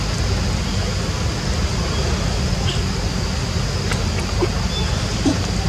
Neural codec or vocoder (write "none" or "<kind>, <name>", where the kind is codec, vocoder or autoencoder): none